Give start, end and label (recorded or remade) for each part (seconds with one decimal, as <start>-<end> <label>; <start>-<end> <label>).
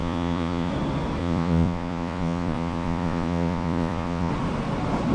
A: 0.0-0.7 remade; 0.7-1.2 recorded; 1.2-4.3 remade; 4.3-5.1 recorded